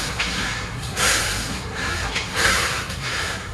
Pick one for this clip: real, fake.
fake